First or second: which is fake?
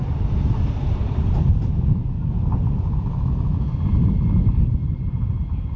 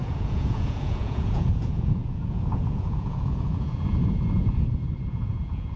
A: second